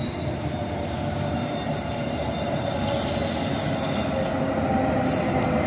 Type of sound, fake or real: real